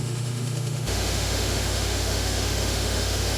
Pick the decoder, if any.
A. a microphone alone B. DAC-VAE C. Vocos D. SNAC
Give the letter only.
B